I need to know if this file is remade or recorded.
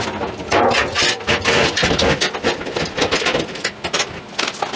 recorded